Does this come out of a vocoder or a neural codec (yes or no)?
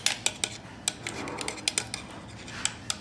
no